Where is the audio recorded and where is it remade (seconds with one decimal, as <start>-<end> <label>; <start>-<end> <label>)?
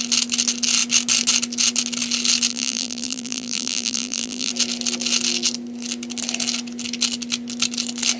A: 0.0-2.5 recorded; 2.5-4.5 remade; 4.5-8.2 recorded